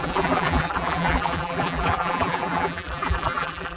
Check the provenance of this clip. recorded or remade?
remade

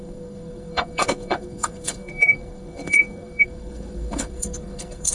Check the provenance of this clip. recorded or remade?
remade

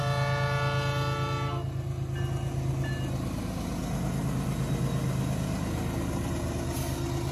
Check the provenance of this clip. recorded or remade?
recorded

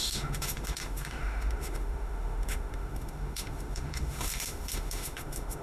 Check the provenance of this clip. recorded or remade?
remade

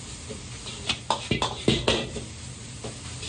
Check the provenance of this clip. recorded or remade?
recorded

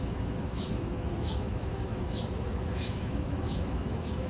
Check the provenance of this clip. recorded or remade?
remade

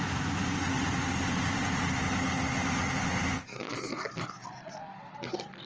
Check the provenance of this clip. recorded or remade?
recorded